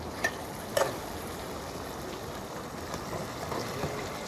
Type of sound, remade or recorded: recorded